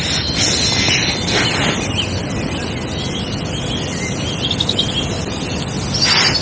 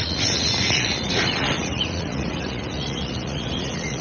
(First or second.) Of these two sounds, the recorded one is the first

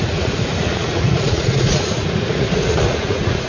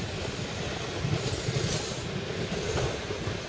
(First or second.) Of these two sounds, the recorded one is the second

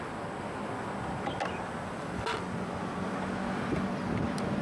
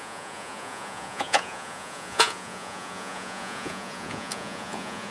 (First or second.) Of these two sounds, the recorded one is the first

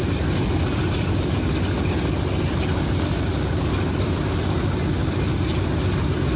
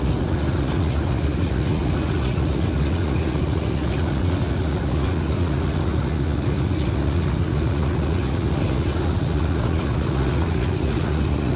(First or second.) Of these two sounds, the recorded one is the first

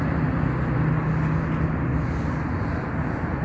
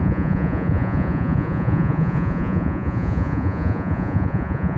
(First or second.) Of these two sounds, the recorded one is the first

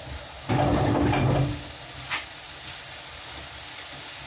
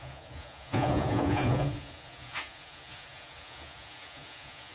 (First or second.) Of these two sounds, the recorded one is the first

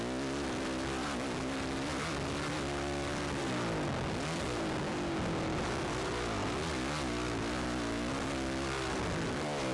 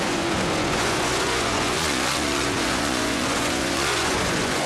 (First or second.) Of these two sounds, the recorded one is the first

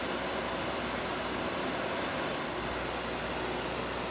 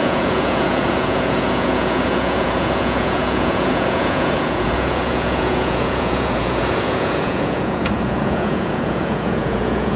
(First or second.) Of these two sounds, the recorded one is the first